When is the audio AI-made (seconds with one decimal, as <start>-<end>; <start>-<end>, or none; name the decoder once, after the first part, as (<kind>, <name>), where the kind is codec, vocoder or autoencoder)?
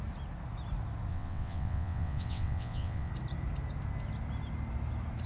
1.1-3.1 (vocoder, WaveNeXt)